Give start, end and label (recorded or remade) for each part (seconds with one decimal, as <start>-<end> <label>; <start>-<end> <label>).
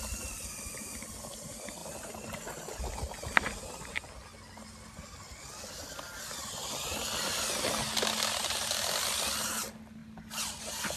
0.0-11.0 recorded